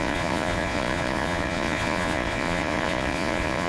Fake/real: fake